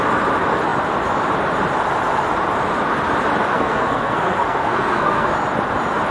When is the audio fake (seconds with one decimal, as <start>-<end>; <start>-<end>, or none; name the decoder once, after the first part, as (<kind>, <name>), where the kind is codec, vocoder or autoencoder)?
3.5-5.3 (codec, SNAC)

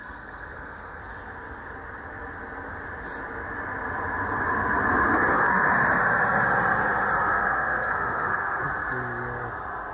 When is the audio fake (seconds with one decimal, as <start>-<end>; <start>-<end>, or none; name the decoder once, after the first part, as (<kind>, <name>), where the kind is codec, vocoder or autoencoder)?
0.0-1.0 (codec, SNAC); 7.3-8.6

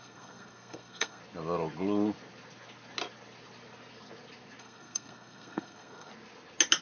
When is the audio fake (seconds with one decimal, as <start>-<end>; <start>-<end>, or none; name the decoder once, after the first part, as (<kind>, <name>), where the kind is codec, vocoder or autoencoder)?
0.0-1.2 (codec, SNAC); 4.6-6.1

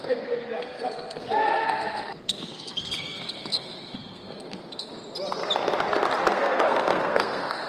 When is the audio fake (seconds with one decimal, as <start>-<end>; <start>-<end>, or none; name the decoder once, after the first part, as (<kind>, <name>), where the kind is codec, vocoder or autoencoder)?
0.0-4.9 (codec, SNAC); 6.3-7.7

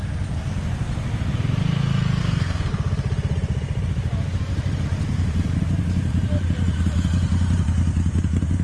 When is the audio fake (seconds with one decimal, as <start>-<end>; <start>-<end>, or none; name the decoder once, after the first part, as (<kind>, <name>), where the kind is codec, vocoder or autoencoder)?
2.2-2.7 (codec, SNAC)